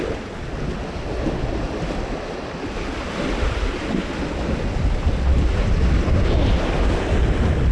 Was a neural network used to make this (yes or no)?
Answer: no